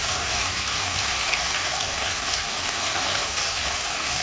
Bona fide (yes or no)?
no